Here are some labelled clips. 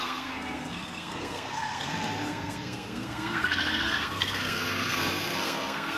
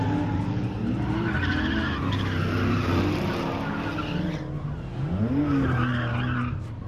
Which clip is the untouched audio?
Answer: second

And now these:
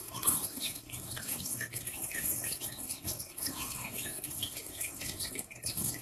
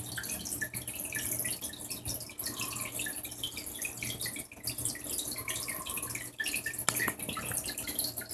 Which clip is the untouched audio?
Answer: second